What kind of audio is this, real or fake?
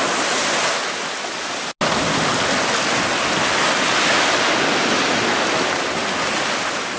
real